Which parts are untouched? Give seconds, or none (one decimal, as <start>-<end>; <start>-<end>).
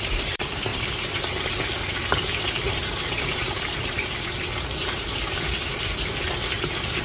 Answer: 5.7-6.6